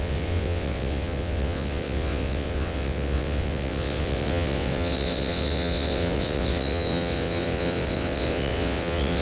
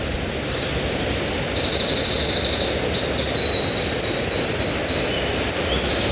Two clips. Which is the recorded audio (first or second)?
second